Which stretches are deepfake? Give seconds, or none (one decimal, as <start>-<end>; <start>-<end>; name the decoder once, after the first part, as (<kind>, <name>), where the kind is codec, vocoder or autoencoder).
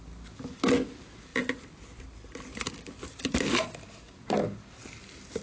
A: none